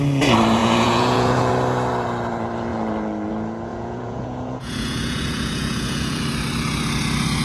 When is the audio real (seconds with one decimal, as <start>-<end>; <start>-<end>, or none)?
0.0-0.6; 1.5-3.7; 6.2-7.4